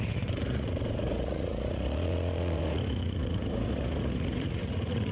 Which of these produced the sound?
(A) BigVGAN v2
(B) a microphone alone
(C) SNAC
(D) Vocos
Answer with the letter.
D